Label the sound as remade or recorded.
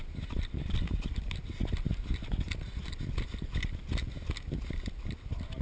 recorded